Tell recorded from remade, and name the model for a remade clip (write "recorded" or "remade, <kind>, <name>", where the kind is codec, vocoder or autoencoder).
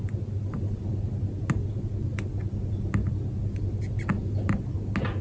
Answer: recorded